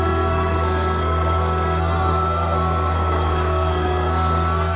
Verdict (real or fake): fake